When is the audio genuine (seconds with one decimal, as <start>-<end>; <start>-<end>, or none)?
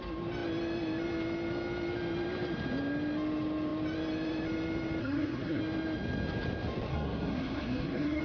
0.0-5.0; 5.6-6.9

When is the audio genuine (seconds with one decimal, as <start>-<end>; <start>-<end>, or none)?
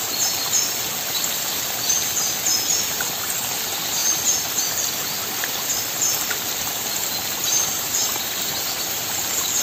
4.0-4.7; 8.0-8.8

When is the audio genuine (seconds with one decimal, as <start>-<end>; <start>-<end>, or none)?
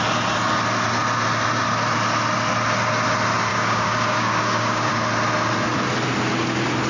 0.0-3.5; 4.9-6.9